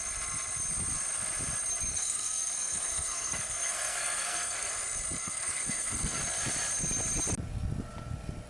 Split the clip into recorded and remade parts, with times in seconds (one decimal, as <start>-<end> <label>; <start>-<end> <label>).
0.0-1.9 recorded; 1.9-4.7 remade; 4.7-5.2 recorded; 5.2-6.2 remade; 6.2-8.5 recorded